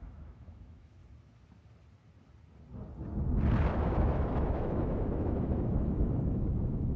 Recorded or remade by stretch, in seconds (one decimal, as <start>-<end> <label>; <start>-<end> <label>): 0.0-1.0 remade; 1.0-3.7 recorded; 3.7-7.0 remade